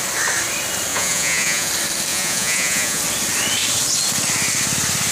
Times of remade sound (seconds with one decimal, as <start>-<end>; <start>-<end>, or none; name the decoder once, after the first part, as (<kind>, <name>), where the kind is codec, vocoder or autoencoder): 0.9-1.7 (vocoder, Vocos); 2.1-3.0